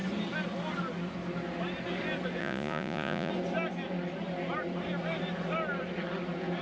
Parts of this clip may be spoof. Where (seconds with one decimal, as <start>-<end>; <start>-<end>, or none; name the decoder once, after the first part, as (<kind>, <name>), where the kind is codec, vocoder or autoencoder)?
2.4-3.3 (vocoder, Vocos)